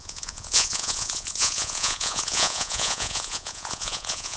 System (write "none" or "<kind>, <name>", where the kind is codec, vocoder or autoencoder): vocoder, Vocos